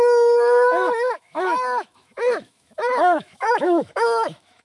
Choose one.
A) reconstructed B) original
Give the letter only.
A